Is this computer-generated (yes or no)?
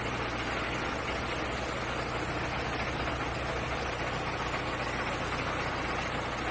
no